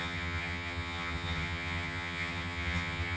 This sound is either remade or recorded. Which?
remade